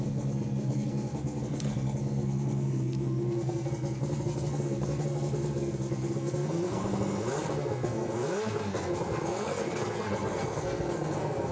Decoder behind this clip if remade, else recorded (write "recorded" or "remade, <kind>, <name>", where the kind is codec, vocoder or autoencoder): remade, codec, SNAC